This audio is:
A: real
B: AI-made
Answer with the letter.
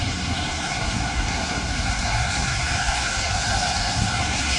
B